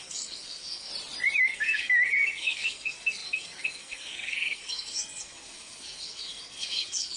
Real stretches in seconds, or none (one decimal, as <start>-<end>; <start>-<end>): 0.9-1.4